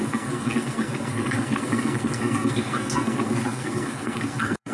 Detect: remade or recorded remade